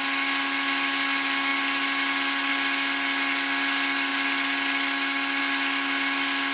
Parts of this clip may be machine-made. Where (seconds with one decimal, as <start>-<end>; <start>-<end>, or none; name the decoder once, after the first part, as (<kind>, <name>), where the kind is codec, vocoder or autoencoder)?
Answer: none

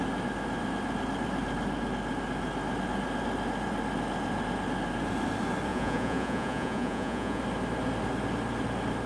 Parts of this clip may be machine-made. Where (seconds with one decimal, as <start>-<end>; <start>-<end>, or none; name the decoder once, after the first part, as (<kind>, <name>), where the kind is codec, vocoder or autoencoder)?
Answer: 5.7-7.4 (vocoder, Vocos)

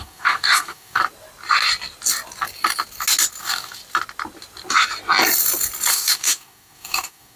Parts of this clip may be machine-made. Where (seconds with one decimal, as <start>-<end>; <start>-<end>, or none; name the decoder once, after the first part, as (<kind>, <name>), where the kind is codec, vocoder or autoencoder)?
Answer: 0.0-1.0 (codec, DAC); 3.4-3.8; 5.9-7.4

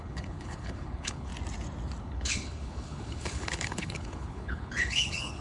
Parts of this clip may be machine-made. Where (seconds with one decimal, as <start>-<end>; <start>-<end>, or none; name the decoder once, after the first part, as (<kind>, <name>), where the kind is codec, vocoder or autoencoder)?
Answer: 0.0-1.3 (codec, HILCodec); 2.0-5.4

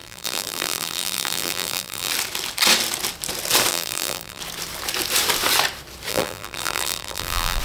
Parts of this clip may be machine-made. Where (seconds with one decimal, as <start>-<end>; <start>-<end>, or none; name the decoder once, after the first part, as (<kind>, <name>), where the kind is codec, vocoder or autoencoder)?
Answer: 0.0-2.1 (vocoder, BigVGAN v2); 3.7-4.4; 6.1-7.6

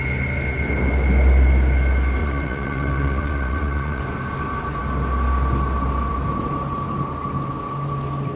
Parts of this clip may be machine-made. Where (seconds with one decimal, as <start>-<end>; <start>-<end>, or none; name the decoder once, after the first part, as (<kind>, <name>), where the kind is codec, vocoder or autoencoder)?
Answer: 2.2-4.0 (vocoder, WaveNeXt)

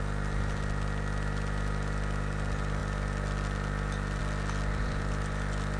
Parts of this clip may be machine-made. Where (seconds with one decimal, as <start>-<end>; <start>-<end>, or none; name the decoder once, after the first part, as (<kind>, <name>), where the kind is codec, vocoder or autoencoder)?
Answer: none

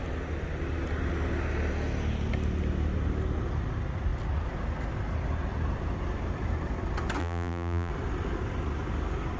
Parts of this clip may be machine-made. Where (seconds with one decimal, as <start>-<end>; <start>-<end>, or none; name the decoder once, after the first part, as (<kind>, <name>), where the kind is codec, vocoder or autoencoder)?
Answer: 7.2-7.9 (vocoder, BigVGAN v2)